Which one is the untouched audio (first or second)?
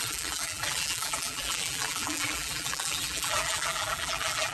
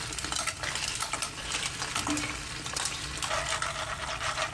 second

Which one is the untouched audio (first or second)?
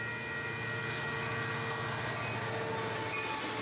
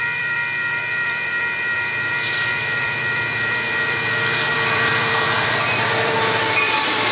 first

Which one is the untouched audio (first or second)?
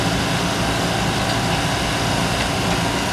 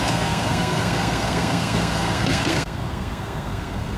first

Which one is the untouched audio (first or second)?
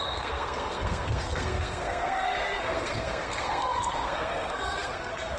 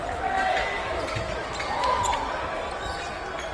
second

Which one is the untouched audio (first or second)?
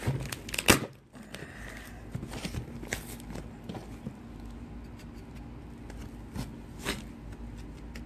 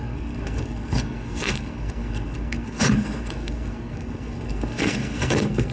first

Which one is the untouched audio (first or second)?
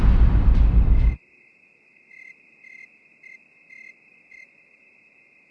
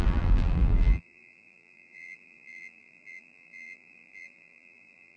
first